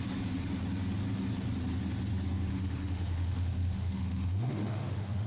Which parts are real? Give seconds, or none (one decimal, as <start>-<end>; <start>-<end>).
0.0-2.5